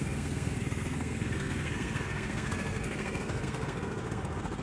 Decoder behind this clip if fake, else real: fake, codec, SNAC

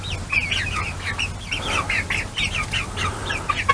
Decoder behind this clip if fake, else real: real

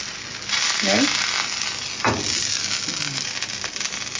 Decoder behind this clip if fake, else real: real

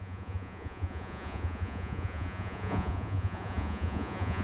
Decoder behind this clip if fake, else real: fake, vocoder, Vocos